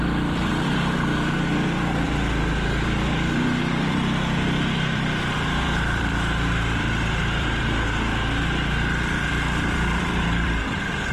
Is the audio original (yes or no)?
no